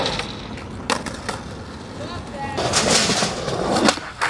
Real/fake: real